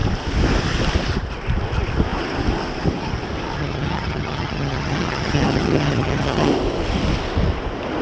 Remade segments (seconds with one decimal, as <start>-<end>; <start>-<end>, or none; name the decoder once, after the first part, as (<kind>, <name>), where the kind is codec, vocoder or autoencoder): 3.6-6.5 (vocoder, HiFi-GAN)